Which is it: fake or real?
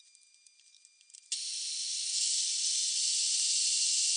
fake